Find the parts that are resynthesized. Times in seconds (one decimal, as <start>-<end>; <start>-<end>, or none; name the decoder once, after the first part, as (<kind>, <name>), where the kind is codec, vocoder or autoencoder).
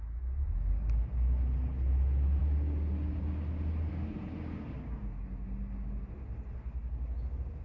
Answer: none